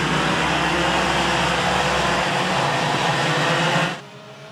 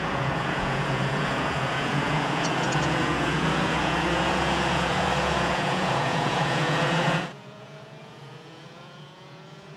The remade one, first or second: second